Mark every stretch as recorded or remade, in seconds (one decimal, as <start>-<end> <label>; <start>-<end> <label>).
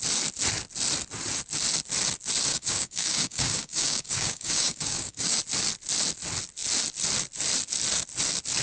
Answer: 0.0-2.5 recorded; 2.5-5.4 remade; 5.4-8.6 recorded